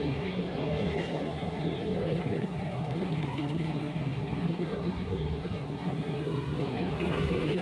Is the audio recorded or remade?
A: remade